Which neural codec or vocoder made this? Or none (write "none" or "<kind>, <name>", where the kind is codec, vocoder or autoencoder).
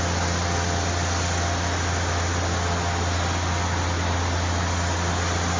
none